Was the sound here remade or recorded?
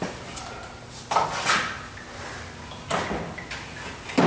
recorded